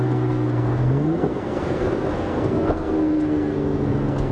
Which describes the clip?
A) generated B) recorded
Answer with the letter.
A